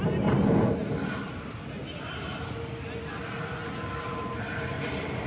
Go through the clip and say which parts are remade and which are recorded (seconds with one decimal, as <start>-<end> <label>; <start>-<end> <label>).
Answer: 0.0-5.3 recorded